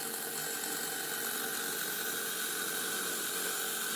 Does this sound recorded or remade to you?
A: recorded